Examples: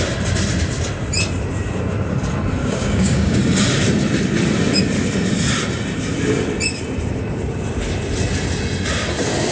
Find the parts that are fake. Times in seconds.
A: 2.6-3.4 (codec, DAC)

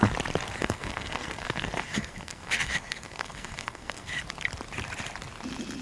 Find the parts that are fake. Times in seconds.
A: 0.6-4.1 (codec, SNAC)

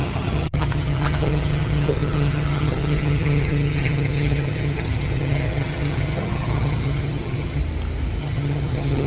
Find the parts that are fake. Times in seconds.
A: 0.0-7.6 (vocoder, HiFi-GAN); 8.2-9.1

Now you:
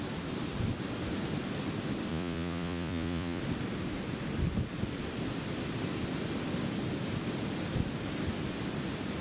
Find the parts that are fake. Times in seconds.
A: 2.1-3.4 (vocoder, Vocos)

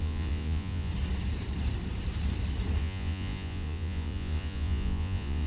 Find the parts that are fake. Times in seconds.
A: 0.0-0.9 (vocoder, Vocos); 2.8-5.5

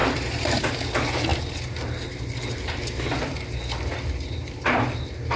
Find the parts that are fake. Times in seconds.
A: 0.0-0.7 (vocoder, BigVGAN v2)